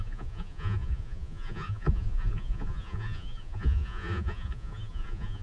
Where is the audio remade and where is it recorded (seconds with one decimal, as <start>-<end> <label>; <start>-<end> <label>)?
0.0-5.4 remade